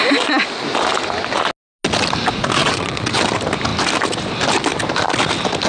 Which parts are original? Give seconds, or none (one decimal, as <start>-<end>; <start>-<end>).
0.0-2.6; 3.2-5.7